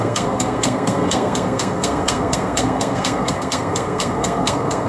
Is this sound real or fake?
fake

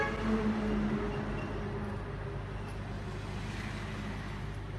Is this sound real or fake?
real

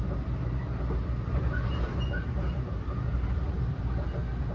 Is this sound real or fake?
real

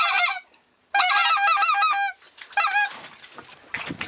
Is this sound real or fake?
real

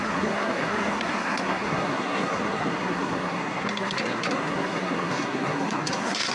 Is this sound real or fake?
fake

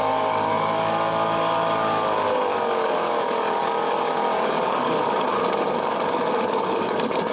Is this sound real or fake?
fake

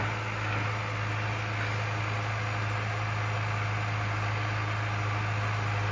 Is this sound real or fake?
real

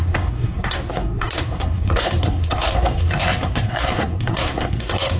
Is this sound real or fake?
fake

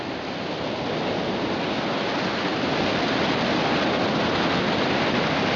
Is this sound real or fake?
real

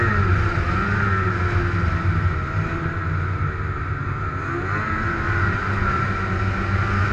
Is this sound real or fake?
real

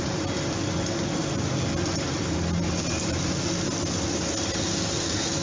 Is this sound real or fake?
real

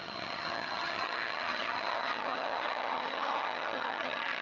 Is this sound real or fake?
fake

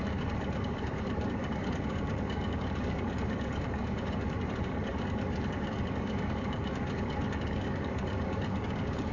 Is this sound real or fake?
fake